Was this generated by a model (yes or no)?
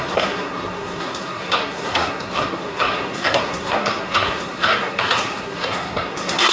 yes